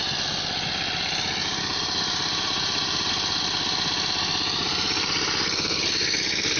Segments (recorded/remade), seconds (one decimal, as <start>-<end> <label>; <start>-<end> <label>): 0.0-1.4 recorded; 1.4-3.1 remade; 3.1-4.6 recorded; 4.6-5.8 remade; 5.8-6.6 recorded